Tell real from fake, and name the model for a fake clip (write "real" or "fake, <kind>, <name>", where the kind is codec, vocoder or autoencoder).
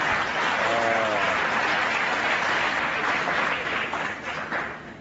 real